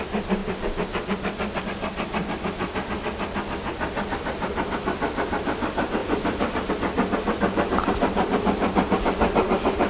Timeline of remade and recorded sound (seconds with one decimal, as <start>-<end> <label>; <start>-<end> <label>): 0.0-2.2 recorded; 2.2-3.0 remade; 3.0-6.0 recorded; 6.0-6.7 remade; 6.7-9.9 recorded